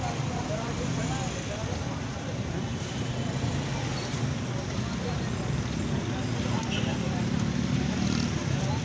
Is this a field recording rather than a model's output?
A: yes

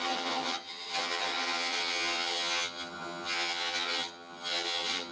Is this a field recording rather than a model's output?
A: no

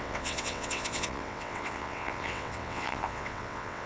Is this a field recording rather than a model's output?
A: no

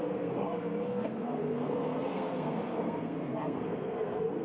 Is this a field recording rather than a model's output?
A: no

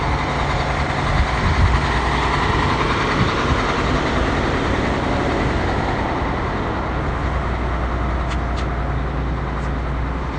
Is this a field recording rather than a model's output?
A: yes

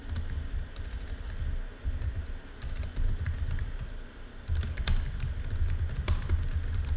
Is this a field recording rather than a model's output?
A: yes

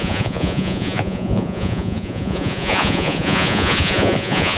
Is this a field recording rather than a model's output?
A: no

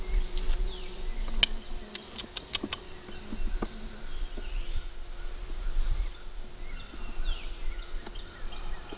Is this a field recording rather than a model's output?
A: yes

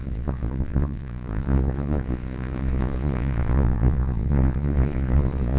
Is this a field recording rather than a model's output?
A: no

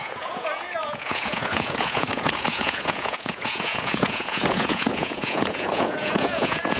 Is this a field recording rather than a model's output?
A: no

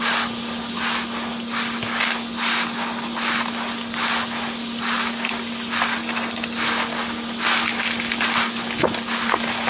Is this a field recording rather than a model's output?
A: yes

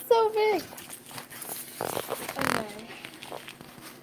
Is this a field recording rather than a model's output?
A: yes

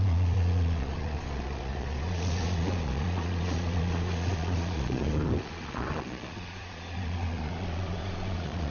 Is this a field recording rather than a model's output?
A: no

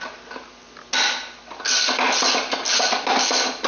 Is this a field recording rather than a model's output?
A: yes